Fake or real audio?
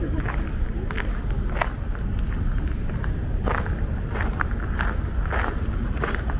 real